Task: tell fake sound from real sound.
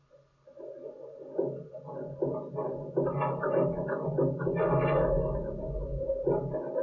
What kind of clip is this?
real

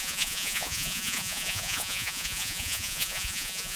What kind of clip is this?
fake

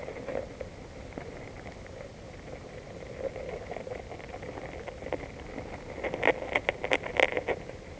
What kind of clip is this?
real